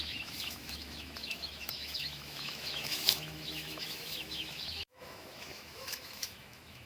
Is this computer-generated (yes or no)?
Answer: yes